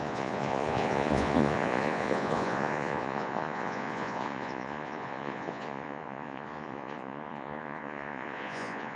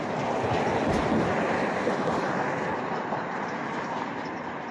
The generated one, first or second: first